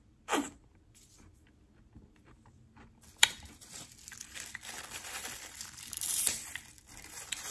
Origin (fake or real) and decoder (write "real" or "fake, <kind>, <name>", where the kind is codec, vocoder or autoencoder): fake, vocoder, BigVGAN v2